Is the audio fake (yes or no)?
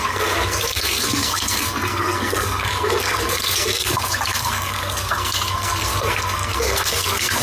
yes